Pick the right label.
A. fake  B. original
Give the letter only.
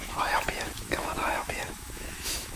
A